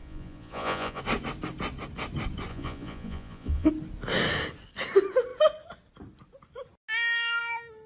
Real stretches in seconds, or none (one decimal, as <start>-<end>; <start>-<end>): 1.0-2.5; 3.7-7.9